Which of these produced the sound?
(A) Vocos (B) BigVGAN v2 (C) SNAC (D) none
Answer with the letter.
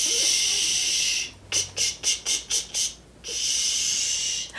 D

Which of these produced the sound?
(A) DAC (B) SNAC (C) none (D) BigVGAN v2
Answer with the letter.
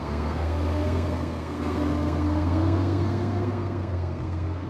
B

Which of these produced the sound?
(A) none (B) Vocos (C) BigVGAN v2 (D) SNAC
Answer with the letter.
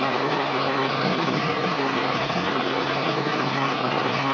D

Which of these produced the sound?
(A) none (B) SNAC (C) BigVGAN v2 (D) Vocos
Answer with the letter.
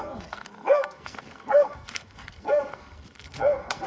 B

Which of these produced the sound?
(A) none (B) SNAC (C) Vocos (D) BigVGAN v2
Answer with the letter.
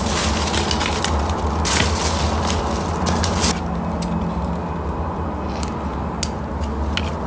A